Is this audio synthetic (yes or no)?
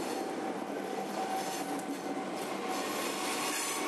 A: no